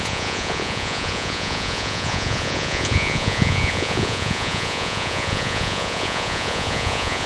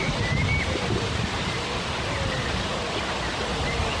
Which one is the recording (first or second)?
second